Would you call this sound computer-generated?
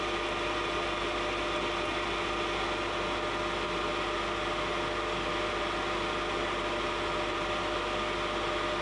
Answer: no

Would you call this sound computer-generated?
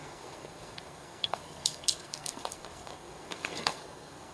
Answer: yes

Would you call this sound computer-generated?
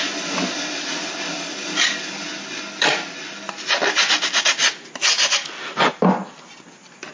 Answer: no